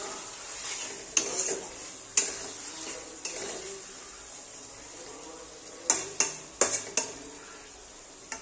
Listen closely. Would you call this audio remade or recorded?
recorded